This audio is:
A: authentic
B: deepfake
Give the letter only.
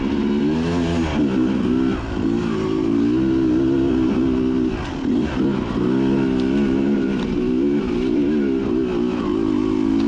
A